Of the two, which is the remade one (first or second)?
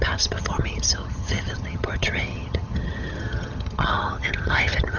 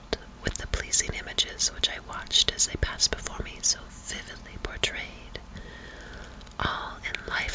first